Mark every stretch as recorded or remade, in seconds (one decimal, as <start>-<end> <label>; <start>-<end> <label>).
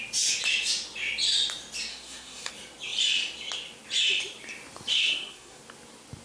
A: 0.0-1.9 recorded; 1.9-2.5 remade; 2.5-4.9 recorded; 4.9-5.6 remade; 5.6-6.2 recorded